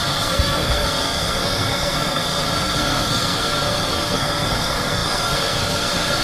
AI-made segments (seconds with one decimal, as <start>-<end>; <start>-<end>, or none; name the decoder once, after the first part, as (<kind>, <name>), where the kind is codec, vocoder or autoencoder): 0.0-6.2 (codec, SNAC)